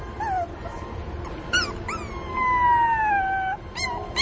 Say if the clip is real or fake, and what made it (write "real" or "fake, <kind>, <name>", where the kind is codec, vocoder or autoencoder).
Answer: real